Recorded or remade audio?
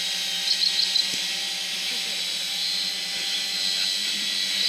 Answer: recorded